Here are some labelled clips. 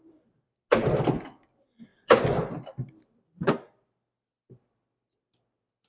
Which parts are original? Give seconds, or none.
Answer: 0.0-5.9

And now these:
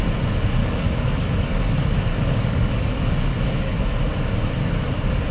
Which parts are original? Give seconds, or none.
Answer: 0.0-0.6; 3.8-5.3

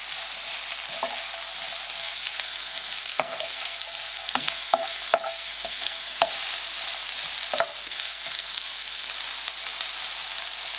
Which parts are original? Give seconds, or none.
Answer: 0.0-2.0; 6.3-7.8; 9.1-10.8

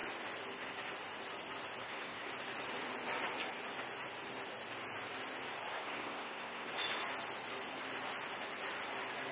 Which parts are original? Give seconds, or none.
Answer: 0.0-1.8; 2.3-5.7; 6.7-9.3

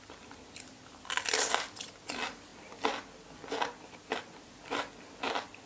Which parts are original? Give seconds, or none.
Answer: 0.0-5.7

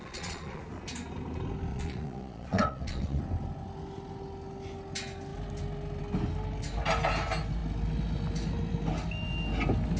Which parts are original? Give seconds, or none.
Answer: 0.6-1.7; 3.2-10.0

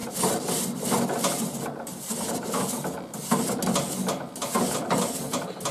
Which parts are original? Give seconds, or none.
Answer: 0.0-5.7

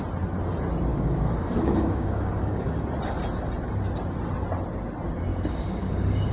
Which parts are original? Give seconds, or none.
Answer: 0.0-0.9; 2.8-5.3